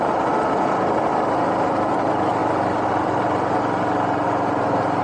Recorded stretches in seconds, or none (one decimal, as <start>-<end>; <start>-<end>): 0.0-5.0